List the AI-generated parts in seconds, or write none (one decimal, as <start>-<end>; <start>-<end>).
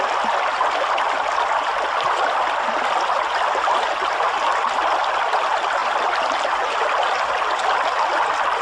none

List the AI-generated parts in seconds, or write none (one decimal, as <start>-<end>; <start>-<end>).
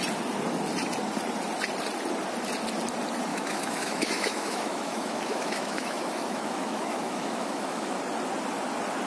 3.3-8.0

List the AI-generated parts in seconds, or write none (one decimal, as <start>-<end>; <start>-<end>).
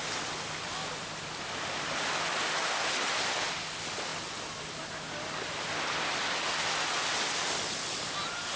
none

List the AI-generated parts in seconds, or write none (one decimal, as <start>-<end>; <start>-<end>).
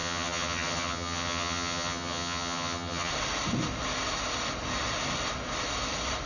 0.0-3.1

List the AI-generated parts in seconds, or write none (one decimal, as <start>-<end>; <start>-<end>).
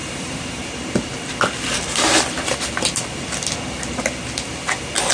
0.0-1.3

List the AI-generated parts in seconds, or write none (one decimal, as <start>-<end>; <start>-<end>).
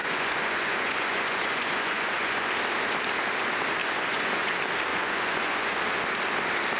0.0-2.5; 3.8-4.5; 4.9-5.8